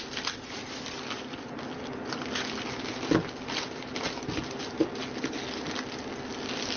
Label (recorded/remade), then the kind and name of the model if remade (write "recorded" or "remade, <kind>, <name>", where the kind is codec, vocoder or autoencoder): recorded